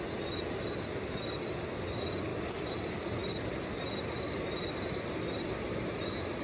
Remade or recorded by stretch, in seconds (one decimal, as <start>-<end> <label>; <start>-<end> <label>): 0.0-6.4 recorded